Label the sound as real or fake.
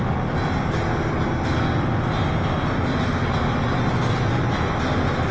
real